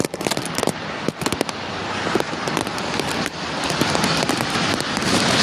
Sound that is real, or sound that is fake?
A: fake